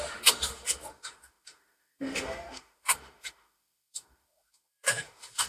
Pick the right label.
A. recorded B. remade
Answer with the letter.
B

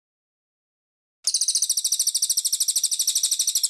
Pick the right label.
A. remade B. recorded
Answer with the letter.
B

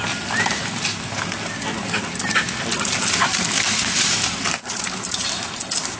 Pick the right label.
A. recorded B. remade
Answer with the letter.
A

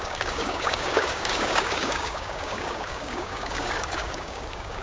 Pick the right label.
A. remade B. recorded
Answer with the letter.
A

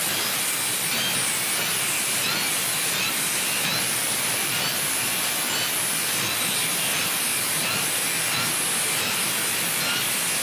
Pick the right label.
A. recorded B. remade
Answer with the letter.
A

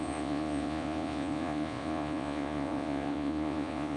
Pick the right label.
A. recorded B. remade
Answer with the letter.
B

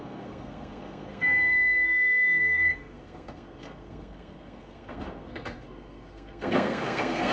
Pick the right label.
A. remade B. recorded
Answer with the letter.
A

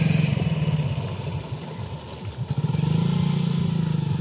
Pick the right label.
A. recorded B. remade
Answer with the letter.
A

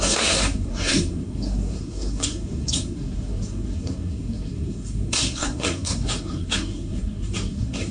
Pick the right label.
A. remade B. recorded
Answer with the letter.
A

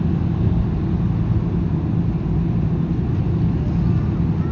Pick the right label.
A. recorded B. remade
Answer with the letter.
A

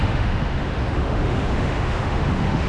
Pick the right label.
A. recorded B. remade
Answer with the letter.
B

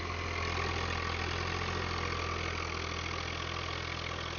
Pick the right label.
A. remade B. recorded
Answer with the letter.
B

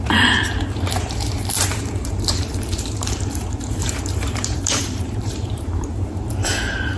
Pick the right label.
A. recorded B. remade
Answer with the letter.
B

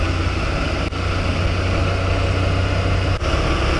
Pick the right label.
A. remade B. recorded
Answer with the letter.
B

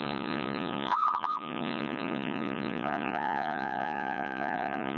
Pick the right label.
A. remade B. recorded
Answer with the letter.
A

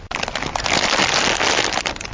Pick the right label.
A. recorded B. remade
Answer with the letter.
B